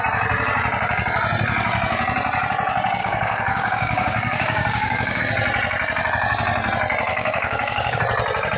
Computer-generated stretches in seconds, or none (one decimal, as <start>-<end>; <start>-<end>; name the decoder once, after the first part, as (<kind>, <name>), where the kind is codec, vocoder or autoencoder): 3.0-5.2 (codec, DAC); 7.1-8.0